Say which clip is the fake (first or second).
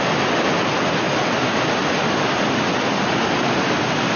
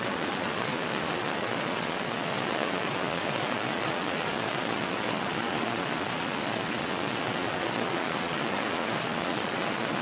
second